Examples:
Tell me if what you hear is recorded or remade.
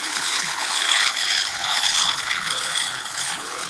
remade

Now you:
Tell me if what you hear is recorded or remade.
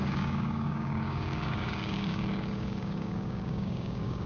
remade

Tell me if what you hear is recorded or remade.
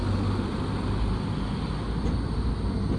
recorded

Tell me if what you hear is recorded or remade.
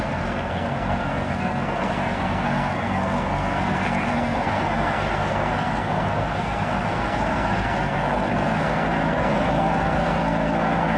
remade